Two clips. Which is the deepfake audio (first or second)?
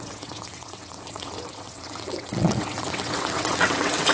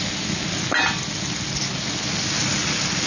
first